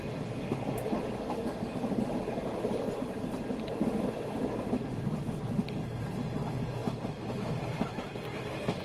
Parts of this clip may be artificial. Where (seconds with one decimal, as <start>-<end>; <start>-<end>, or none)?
2.6-5.4